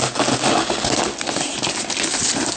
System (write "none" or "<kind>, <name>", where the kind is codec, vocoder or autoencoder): none